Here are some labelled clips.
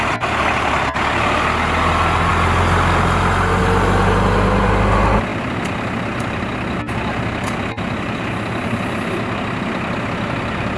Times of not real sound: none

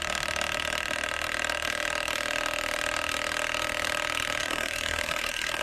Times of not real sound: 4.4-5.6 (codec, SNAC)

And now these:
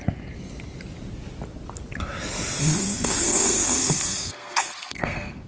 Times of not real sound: 2.6-5.5 (codec, SNAC)

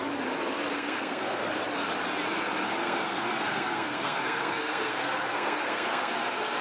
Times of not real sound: 0.7-1.5 (codec, SNAC); 2.8-6.1

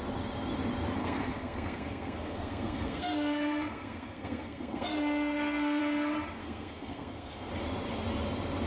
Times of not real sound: 1.0-5.8 (codec, SNAC); 6.4-7.5

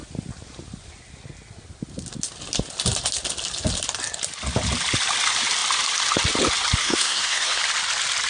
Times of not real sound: 6.8-7.6 (codec, SNAC)